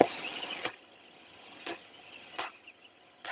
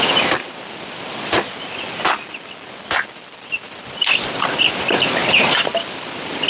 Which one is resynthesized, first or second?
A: first